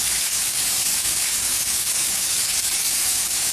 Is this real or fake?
fake